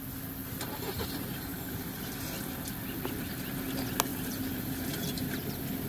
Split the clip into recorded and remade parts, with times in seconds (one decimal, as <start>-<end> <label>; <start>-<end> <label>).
0.0-0.4 recorded; 0.4-1.1 remade; 1.1-1.5 recorded; 1.5-2.1 remade; 2.1-4.1 recorded; 4.1-5.3 remade; 5.3-5.9 recorded